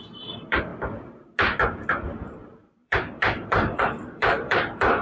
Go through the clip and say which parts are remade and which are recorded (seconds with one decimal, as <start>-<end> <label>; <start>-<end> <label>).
0.0-0.7 remade; 0.7-2.3 recorded; 2.3-5.0 remade